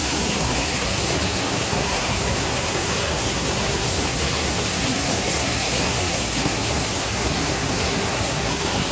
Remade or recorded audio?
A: remade